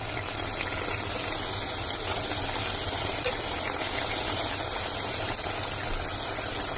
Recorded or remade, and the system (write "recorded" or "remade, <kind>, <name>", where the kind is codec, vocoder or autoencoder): recorded